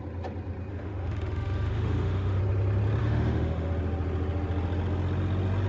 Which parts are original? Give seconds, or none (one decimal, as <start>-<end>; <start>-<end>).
0.0-0.7; 2.4-3.0; 3.7-5.7